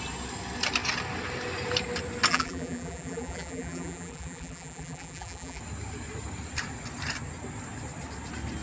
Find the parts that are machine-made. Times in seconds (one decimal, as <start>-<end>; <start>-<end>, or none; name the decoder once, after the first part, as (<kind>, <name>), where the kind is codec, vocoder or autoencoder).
2.3-5.6 (vocoder, BigVGAN v2)